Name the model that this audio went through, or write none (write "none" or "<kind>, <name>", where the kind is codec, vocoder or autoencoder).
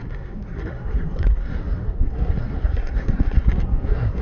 codec, SNAC